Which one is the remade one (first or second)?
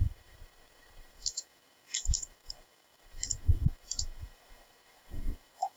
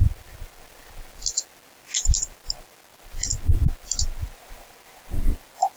first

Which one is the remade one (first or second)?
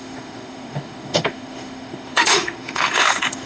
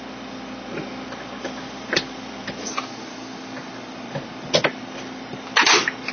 first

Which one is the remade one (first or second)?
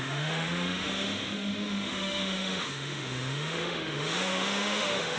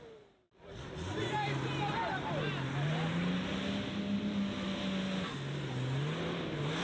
first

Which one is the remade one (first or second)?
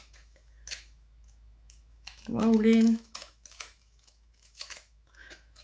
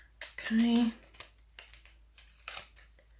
first